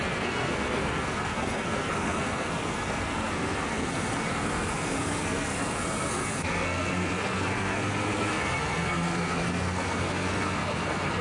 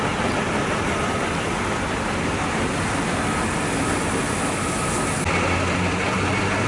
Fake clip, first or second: first